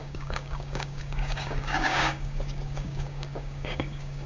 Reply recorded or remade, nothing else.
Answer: remade